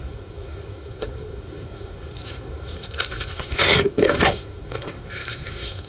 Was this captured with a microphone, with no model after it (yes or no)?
no